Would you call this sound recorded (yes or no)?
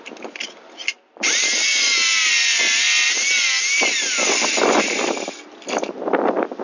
yes